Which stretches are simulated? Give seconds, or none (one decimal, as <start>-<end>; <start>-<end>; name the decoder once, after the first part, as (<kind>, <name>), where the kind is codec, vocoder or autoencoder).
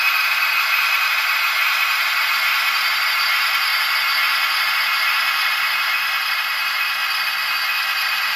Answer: 0.0-3.7 (vocoder, BigVGAN v2); 4.7-7.0; 8.0-8.4